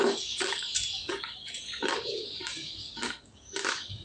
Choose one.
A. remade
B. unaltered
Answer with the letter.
A